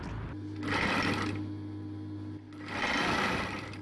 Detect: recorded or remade recorded